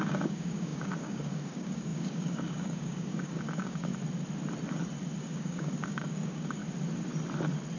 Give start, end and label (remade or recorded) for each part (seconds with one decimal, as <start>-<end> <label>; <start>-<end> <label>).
0.0-3.9 remade; 3.9-5.2 recorded; 5.2-6.6 remade; 6.6-7.8 recorded